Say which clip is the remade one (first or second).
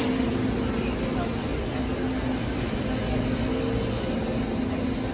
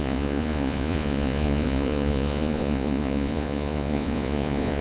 second